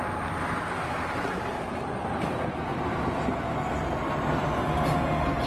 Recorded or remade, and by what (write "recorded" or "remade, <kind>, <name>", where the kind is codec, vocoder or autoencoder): recorded